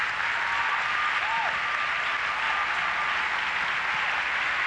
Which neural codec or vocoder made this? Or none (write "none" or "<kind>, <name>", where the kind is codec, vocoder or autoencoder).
none